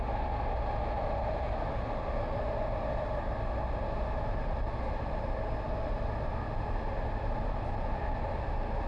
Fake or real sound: real